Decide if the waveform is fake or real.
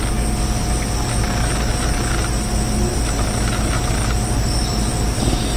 real